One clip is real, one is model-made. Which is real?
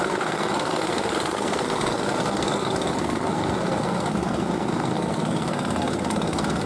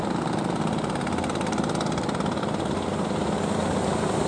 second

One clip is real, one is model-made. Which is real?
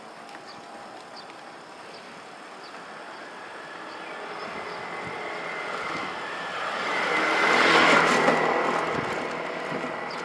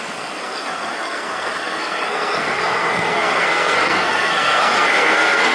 first